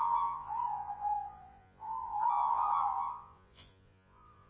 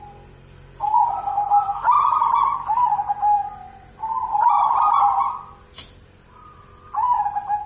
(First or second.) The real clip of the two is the second